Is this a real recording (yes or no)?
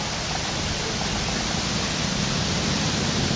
yes